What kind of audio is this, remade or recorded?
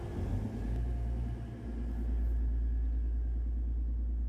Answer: recorded